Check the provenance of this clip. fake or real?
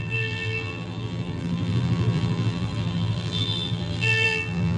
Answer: fake